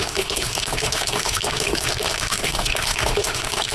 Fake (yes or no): yes